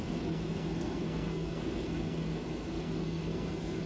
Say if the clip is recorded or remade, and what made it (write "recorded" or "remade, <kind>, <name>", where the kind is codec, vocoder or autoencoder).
remade, codec, SNAC